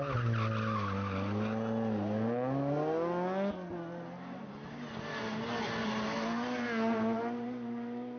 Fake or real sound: real